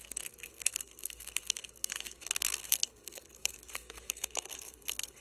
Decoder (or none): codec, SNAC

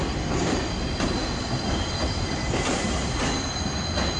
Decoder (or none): none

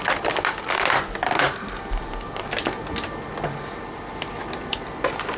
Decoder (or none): none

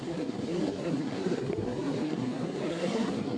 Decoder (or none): codec, SNAC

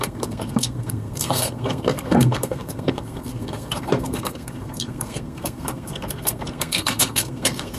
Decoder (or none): codec, SNAC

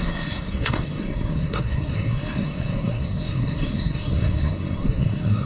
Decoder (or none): codec, SNAC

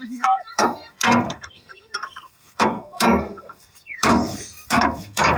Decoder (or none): codec, SNAC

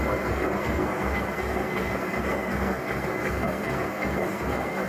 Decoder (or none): codec, SNAC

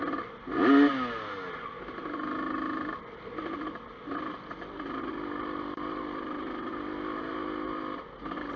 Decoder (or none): none